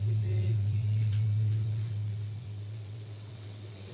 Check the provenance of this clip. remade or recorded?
remade